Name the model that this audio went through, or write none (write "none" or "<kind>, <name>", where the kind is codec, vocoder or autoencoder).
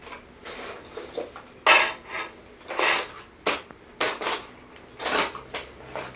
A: none